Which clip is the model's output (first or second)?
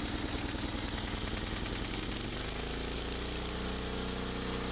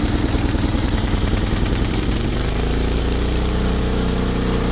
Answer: second